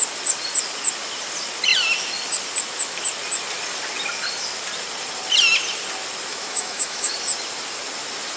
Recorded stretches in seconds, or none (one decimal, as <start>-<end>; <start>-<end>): 0.0-6.3; 7.1-8.4

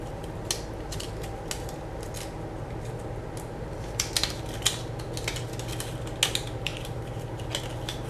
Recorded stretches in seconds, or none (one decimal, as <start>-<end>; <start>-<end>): 0.0-8.1

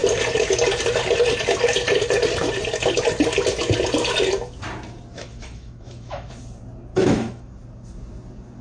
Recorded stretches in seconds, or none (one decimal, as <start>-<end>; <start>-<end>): 0.0-5.1; 6.3-6.9; 7.5-8.6

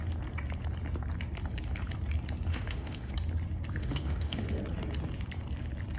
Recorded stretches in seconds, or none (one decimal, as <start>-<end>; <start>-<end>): 0.0-2.5; 3.1-3.8; 4.6-6.0